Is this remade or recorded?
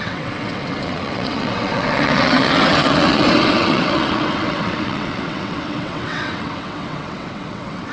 remade